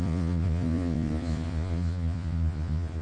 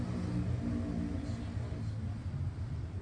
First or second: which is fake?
first